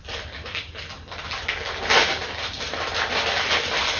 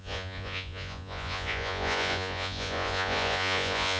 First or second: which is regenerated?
second